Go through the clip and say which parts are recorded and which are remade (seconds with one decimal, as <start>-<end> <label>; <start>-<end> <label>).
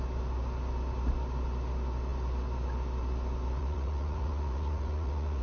0.0-3.6 recorded; 3.6-5.4 remade